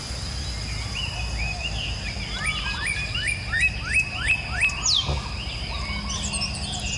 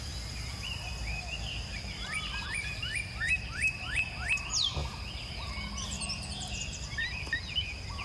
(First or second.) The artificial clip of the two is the second